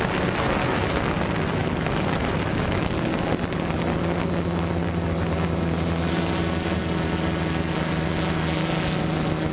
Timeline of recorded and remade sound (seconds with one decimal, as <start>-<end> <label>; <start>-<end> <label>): 0.0-1.6 recorded; 1.6-2.8 remade; 2.8-9.5 recorded